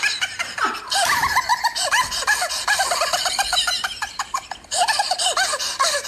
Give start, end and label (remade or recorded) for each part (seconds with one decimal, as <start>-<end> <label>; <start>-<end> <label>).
0.0-1.5 recorded; 1.5-5.2 remade; 5.2-6.1 recorded